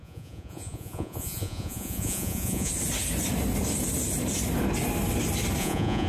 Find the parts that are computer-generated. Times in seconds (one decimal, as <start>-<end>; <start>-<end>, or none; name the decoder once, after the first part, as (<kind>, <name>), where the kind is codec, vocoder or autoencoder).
0.0-2.7 (vocoder, Vocos); 5.6-6.1